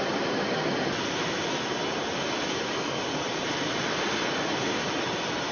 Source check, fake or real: real